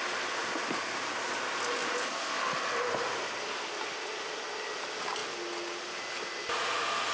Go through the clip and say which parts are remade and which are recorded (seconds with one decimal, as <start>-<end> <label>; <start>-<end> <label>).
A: 0.0-7.1 recorded